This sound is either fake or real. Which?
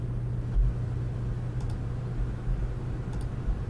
real